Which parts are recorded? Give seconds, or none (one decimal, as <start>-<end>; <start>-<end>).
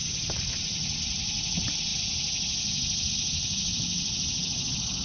0.0-5.0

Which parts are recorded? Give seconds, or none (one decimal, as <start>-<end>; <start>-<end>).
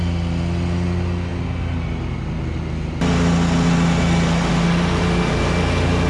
0.0-6.1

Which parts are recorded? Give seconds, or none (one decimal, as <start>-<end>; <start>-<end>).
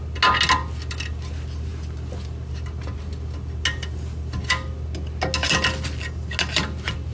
0.0-7.1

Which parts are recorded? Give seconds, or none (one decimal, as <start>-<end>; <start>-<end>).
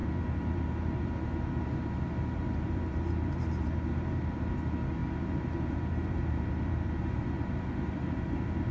none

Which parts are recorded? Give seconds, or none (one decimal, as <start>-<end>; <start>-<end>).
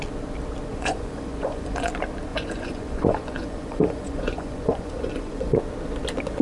0.0-0.7; 1.9-2.3; 5.6-6.4